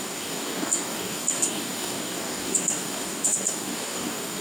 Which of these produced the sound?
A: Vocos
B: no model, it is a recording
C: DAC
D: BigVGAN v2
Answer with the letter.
C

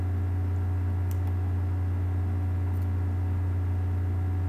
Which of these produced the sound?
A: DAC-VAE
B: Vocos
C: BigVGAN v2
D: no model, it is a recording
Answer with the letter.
D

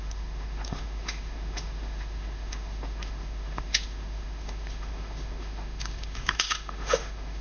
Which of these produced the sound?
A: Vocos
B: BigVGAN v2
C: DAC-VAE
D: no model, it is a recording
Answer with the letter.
C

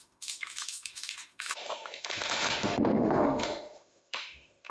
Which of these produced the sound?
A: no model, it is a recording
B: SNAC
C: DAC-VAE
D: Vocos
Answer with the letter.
C